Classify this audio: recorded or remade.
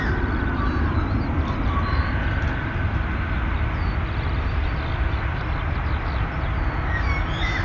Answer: recorded